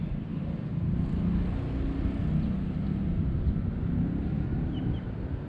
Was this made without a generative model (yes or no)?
yes